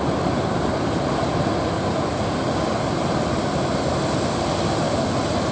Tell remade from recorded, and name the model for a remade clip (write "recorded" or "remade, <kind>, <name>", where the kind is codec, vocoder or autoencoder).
recorded